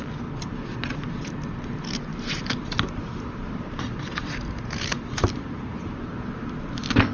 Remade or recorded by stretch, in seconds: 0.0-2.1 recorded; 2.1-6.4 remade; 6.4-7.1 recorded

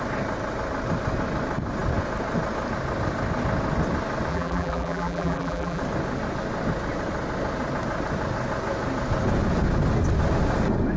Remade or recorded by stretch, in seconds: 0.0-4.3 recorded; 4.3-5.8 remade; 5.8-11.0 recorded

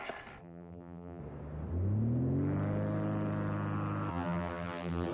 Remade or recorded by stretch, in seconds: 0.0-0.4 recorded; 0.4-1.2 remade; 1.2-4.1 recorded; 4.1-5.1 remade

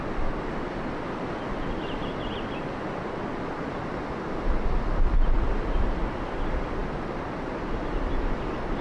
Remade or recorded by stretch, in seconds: 0.0-8.8 recorded